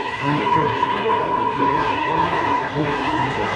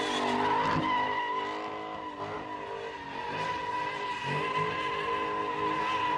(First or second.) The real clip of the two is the second